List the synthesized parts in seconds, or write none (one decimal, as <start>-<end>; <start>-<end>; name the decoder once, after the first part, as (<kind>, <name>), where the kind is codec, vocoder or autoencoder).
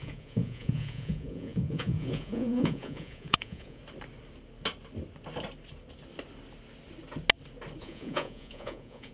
0.0-3.8 (vocoder, Vocos); 7.8-9.1